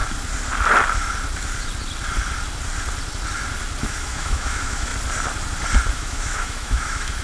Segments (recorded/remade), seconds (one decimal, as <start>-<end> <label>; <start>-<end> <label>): 0.0-3.8 recorded; 3.8-4.9 remade; 4.9-5.9 recorded; 5.9-7.2 remade